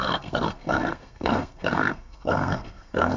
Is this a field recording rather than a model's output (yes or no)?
no